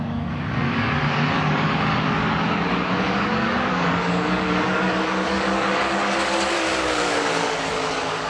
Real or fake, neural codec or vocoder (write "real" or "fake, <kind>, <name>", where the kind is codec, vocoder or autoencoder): fake, codec, DAC